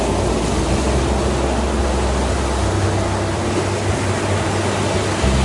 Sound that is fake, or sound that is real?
real